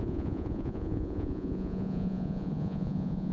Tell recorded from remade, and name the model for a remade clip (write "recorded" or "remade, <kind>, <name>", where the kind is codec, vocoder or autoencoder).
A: remade, vocoder, Vocos